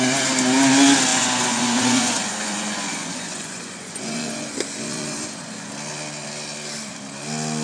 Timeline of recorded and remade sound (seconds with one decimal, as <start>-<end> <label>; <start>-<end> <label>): 0.0-1.1 recorded; 1.1-5.7 remade; 5.7-7.6 recorded